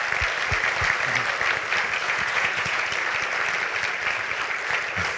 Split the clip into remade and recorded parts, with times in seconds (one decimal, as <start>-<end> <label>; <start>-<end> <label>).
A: 0.0-2.0 recorded; 2.0-2.9 remade; 2.9-5.2 recorded